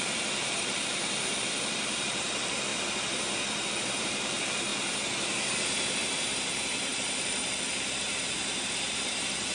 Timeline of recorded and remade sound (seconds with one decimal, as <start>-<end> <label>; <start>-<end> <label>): 0.0-2.7 remade; 2.7-3.7 recorded; 3.7-4.7 remade; 4.7-5.6 recorded; 5.6-9.5 remade